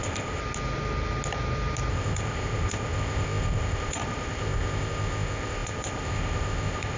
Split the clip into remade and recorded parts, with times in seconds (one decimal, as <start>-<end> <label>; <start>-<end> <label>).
0.0-0.4 remade; 0.4-1.9 recorded; 1.9-7.0 remade